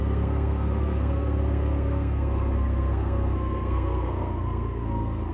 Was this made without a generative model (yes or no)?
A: no